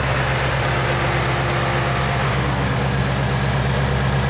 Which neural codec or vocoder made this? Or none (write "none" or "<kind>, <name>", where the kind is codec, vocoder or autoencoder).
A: none